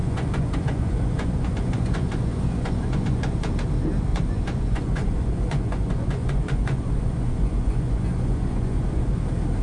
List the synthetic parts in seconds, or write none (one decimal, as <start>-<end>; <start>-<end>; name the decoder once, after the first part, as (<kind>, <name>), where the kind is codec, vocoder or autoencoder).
0.0-3.5 (vocoder, Vocos); 4.1-9.2